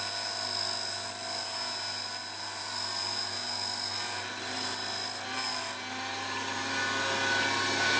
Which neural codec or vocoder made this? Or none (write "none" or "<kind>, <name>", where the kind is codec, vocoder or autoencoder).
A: none